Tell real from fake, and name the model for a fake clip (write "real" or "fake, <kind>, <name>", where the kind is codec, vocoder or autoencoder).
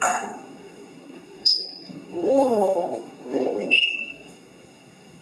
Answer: fake, codec, SNAC